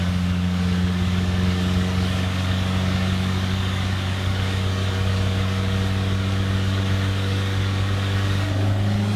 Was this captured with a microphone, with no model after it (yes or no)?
no